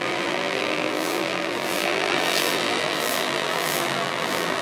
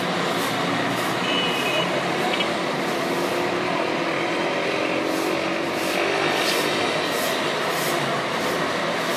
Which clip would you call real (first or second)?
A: second